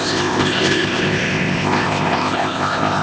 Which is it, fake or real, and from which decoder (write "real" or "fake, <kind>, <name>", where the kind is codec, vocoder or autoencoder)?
fake, codec, ZipCodec